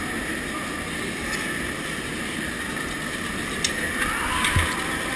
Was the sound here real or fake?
real